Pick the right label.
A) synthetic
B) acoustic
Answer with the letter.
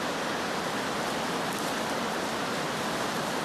B